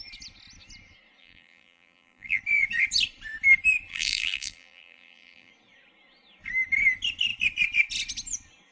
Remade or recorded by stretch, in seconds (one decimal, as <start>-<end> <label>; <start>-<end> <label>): 0.0-1.2 recorded; 1.2-2.4 remade; 2.4-3.9 recorded; 3.9-5.5 remade; 5.5-8.7 recorded